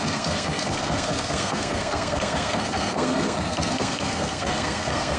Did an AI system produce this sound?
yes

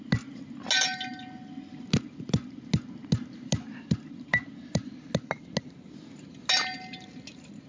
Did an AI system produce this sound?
no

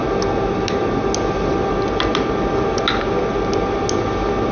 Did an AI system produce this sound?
no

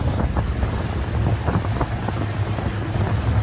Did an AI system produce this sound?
no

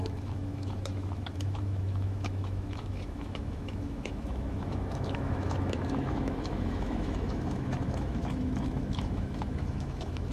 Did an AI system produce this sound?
yes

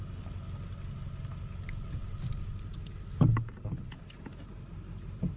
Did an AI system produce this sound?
no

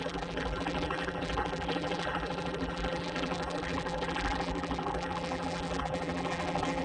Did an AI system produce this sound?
yes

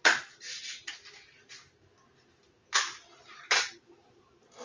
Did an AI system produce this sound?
no